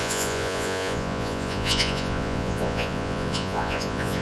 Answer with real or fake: fake